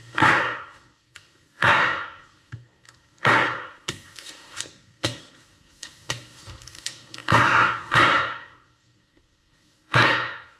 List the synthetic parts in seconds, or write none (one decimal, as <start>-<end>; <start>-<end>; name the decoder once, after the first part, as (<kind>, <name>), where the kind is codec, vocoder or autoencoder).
0.0-10.6 (codec, SNAC)